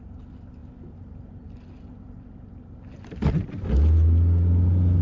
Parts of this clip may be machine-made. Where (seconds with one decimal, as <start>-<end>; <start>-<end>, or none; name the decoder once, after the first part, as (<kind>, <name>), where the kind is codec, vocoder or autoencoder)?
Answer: none